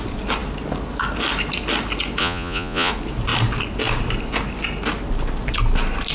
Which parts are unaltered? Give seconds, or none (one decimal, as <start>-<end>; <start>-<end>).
0.0-2.2; 2.9-6.1